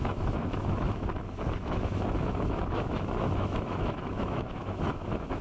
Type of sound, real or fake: fake